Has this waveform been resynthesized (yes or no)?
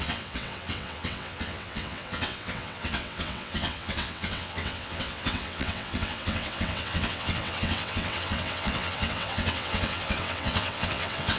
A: yes